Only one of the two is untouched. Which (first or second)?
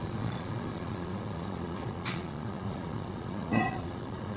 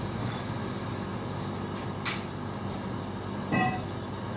second